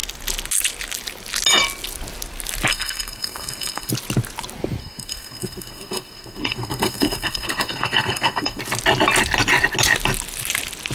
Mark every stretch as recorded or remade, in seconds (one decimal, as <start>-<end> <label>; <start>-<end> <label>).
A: 0.0-2.7 recorded; 2.7-3.9 remade; 3.9-4.8 recorded; 4.8-8.6 remade; 8.6-10.9 recorded